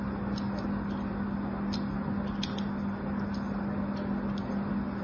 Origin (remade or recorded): recorded